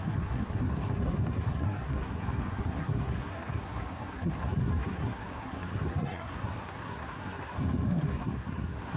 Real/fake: fake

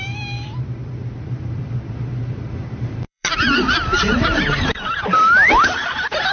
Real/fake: fake